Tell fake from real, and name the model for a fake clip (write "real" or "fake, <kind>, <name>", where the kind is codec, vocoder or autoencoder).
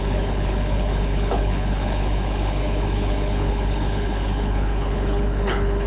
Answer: fake, codec, HILCodec